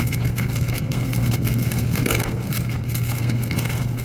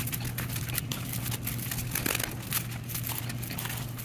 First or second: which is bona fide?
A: second